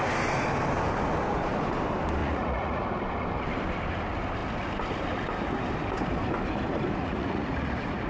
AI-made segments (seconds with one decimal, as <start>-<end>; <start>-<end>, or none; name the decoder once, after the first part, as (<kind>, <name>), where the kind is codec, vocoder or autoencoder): 2.2-3.0 (vocoder, Vocos); 7.0-8.1